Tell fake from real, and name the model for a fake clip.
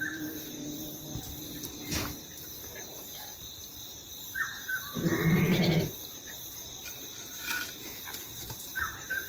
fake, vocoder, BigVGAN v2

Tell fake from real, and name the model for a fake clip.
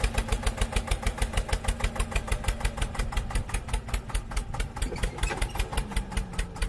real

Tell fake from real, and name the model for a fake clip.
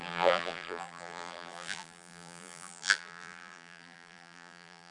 fake, vocoder, BigVGAN v2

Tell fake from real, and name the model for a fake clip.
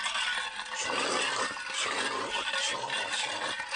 real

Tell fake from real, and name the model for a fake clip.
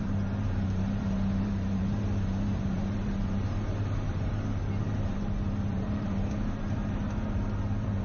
fake, vocoder, BigVGAN v2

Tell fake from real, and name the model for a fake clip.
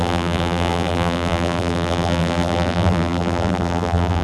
fake, vocoder, BigVGAN v2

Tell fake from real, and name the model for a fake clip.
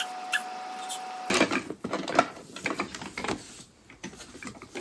real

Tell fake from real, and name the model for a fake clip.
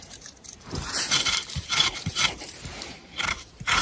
fake, vocoder, BigVGAN v2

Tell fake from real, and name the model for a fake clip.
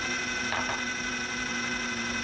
fake, vocoder, BigVGAN v2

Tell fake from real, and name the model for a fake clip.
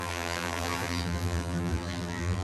fake, vocoder, BigVGAN v2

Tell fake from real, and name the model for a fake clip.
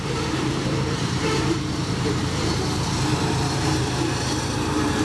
fake, vocoder, BigVGAN v2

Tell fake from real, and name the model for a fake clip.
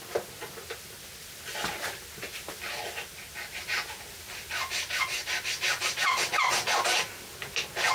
real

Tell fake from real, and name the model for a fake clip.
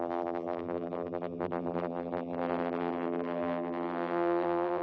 fake, vocoder, BigVGAN v2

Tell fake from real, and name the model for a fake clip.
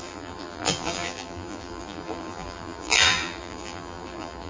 fake, vocoder, BigVGAN v2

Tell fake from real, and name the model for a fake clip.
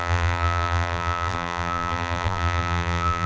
fake, vocoder, BigVGAN v2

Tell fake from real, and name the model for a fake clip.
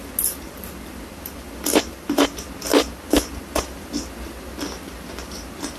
real